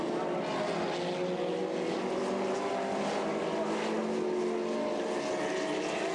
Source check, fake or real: real